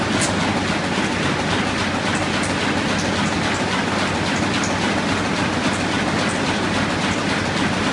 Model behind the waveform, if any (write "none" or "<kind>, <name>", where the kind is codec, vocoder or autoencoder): none